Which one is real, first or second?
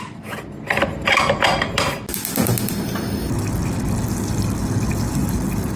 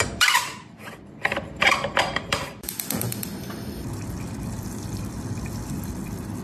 first